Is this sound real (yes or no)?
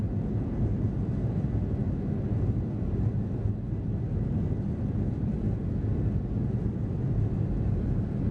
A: yes